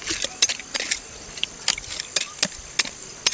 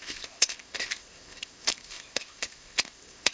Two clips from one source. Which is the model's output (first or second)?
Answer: second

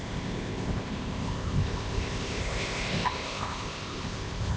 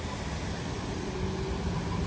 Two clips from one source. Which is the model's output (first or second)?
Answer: first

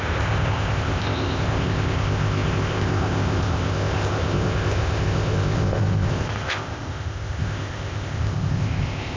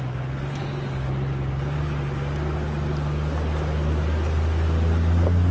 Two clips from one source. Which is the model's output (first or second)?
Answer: first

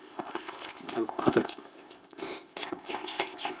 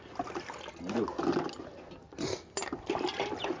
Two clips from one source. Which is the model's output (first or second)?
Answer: first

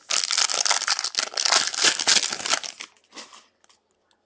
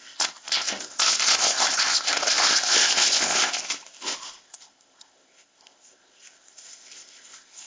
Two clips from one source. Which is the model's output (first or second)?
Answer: second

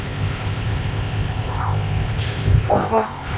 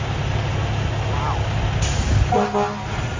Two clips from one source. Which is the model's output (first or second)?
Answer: first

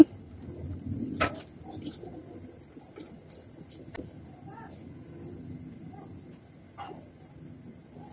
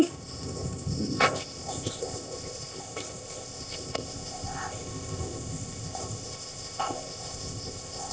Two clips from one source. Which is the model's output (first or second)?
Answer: second